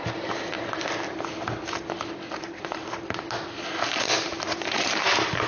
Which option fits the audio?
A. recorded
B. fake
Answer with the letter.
A